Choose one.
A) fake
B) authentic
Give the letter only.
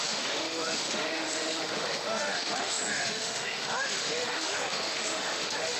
A